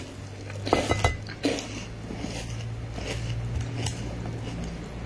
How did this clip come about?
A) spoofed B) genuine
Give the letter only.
B